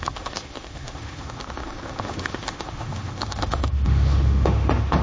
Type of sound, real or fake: fake